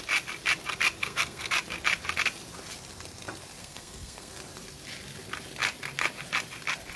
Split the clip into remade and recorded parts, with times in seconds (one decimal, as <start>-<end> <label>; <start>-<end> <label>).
0.0-1.0 recorded; 1.0-1.5 remade; 1.5-3.6 recorded; 3.6-4.3 remade; 4.3-7.0 recorded